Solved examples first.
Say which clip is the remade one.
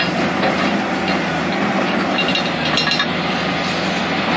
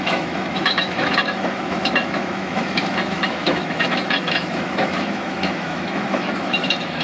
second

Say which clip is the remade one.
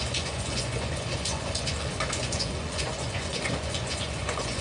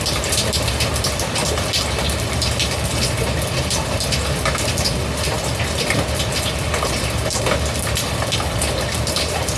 first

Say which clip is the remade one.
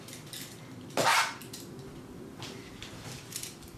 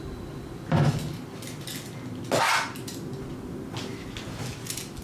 first